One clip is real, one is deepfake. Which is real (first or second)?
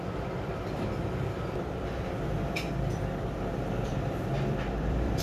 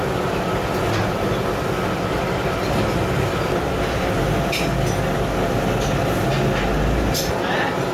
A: second